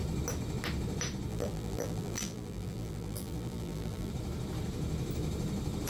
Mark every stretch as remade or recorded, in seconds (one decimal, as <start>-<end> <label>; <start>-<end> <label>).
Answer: 0.0-1.3 recorded; 1.3-4.1 remade; 4.1-5.9 recorded